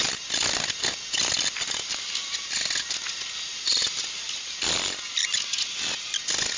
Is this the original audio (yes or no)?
yes